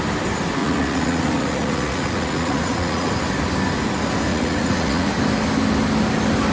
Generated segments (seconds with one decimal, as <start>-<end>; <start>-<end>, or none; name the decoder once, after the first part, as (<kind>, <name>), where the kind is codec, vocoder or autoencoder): 0.6-3.1 (vocoder, Vocos); 4.3-5.2